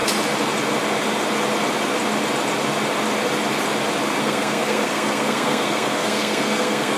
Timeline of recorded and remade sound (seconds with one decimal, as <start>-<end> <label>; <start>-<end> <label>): 0.0-4.2 recorded; 4.2-7.0 remade